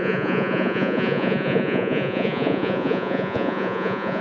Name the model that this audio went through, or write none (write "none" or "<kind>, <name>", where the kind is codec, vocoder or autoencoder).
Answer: vocoder, Vocos